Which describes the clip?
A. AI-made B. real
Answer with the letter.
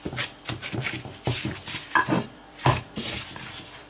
A